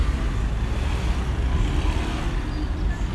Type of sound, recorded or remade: recorded